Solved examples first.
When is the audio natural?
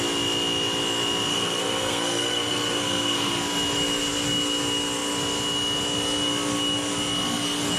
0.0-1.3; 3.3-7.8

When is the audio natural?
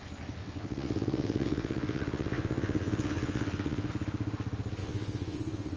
0.0-0.4; 3.9-4.8